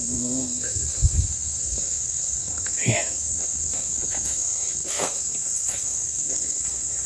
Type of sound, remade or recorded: remade